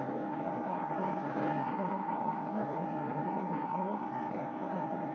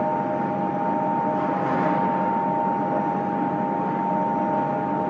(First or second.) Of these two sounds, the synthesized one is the first